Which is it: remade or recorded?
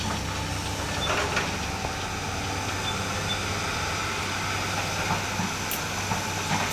recorded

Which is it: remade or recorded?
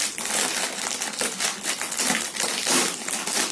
recorded